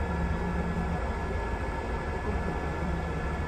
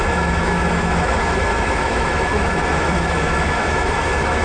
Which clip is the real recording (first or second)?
first